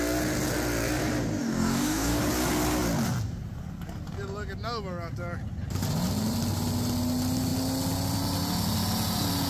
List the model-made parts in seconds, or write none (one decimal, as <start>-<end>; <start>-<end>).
1.4-2.2